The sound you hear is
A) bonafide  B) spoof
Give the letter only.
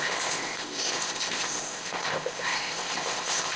B